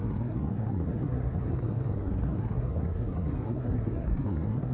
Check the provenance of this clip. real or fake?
fake